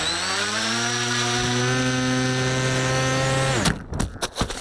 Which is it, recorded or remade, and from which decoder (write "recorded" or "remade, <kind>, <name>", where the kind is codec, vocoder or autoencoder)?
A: recorded